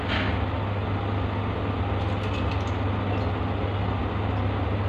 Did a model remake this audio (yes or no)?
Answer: no